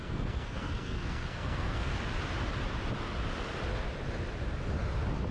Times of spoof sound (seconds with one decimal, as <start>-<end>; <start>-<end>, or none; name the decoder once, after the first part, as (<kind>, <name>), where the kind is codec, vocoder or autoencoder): 0.0-1.9 (codec, SNAC)